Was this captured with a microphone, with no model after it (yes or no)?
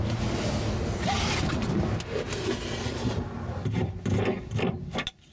yes